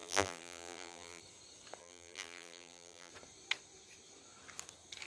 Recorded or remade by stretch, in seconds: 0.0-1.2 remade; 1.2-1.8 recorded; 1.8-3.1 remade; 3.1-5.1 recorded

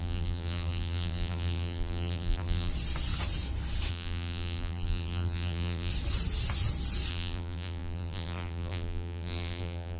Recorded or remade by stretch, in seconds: 0.0-2.7 remade; 2.7-3.9 recorded; 3.9-5.9 remade; 5.9-7.1 recorded; 7.1-10.0 remade

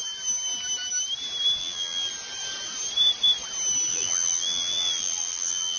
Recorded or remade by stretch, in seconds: 0.0-1.6 recorded; 1.6-2.1 remade; 2.1-3.9 recorded; 3.9-5.8 remade